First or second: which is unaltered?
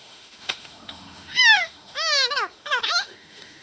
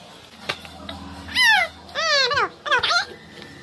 second